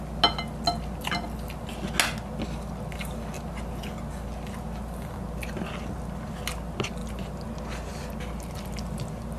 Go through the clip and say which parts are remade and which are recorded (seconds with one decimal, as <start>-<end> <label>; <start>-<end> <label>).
0.0-9.4 recorded